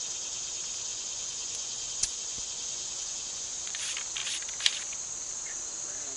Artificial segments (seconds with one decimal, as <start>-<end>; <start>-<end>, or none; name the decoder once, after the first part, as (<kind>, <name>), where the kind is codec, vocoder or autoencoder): 0.9-3.8 (vocoder, Vocos)